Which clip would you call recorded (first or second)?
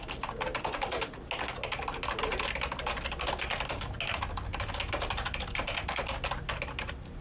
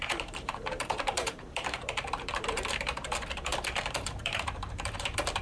first